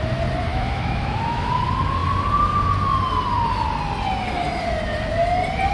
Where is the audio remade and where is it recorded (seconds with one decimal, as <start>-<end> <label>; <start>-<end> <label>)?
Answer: 0.0-0.5 recorded; 0.5-1.5 remade; 1.5-5.7 recorded